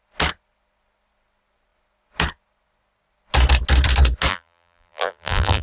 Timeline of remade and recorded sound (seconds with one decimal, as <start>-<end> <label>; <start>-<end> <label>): 0.0-4.3 recorded; 4.3-5.6 remade